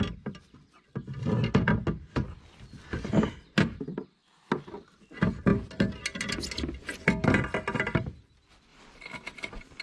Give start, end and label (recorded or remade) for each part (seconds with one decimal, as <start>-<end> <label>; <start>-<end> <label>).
0.0-9.8 recorded